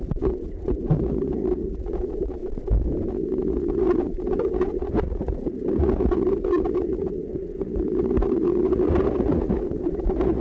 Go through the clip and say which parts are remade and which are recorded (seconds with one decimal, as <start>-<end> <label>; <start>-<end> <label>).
0.0-2.4 remade; 2.4-3.1 recorded; 3.1-10.4 remade